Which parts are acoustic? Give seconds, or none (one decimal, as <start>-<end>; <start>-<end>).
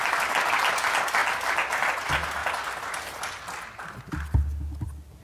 0.0-5.2